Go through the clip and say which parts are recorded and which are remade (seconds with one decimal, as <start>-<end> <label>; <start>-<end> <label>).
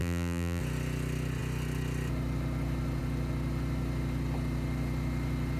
0.0-0.6 remade; 0.6-5.6 recorded